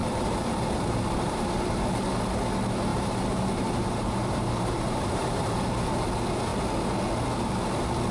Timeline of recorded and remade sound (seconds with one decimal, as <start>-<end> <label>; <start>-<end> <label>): 0.0-1.7 remade; 1.7-2.9 recorded; 2.9-5.6 remade; 5.6-8.1 recorded